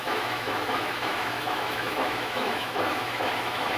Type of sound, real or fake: fake